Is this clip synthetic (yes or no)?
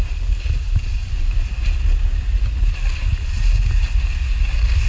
no